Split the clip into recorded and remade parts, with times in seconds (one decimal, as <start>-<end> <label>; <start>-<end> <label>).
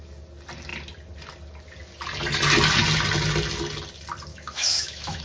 0.0-4.3 recorded; 4.3-5.2 remade